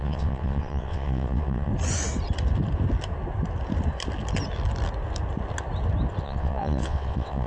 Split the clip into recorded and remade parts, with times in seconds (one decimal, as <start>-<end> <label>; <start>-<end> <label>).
0.0-1.7 remade; 1.7-6.2 recorded; 6.2-7.5 remade